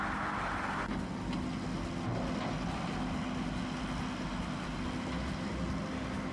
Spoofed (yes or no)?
no